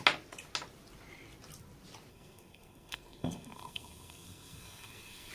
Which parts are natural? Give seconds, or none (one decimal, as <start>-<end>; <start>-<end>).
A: 0.0-2.1